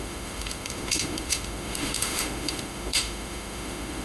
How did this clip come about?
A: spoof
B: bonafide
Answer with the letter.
A